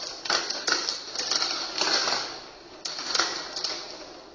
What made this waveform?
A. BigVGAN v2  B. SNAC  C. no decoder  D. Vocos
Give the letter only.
C